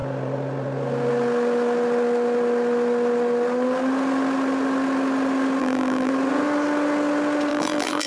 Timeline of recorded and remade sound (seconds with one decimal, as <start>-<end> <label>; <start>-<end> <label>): 0.0-5.6 recorded; 5.6-6.1 remade; 6.1-7.5 recorded; 7.5-8.1 remade

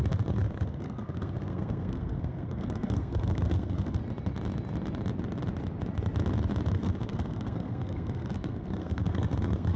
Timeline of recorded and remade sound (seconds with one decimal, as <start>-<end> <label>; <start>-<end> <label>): 0.0-4.0 remade; 4.0-6.7 recorded; 6.7-9.8 remade